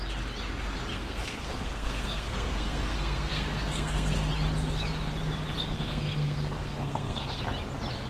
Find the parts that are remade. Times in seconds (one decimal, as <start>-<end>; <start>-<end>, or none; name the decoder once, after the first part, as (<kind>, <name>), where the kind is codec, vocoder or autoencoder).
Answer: 0.9-4.3 (codec, SNAC); 5.6-7.4